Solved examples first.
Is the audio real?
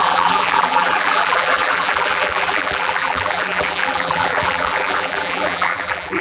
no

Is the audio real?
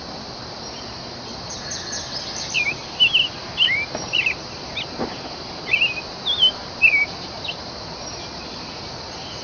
yes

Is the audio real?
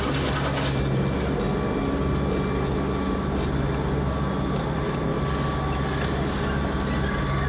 yes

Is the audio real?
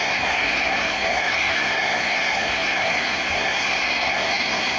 no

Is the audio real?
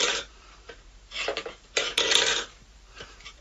no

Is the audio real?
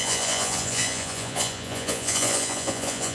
no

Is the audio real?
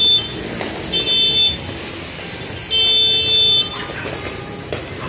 yes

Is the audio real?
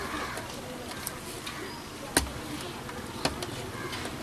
yes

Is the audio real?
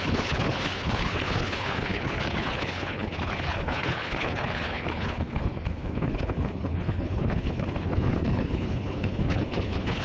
no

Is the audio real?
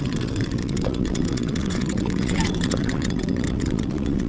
no